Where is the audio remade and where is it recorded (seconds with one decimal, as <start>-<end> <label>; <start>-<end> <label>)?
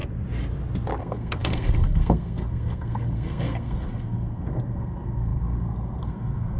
0.0-1.0 recorded; 1.0-6.6 remade